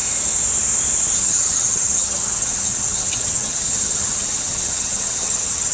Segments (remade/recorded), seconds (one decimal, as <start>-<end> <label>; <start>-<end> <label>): 0.0-1.2 recorded; 1.2-5.7 remade